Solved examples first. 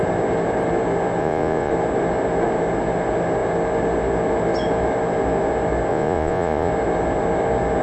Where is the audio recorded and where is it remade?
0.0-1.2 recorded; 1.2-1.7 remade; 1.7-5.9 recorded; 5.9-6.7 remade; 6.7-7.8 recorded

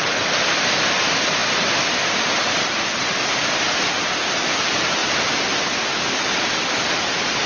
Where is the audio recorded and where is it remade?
0.0-7.5 recorded